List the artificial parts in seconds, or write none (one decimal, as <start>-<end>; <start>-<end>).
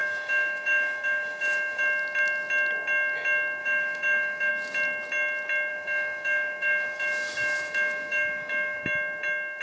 0.0-1.8; 3.6-4.5; 5.7-8.8